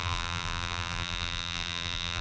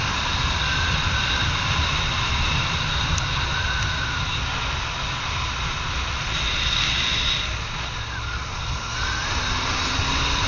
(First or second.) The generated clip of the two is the first